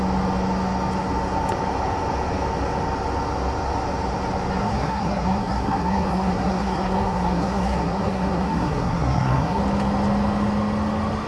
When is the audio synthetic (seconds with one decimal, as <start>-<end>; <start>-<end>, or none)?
4.6-9.6